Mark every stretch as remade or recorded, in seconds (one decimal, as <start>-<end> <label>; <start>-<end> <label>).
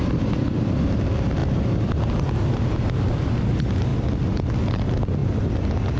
0.0-6.0 recorded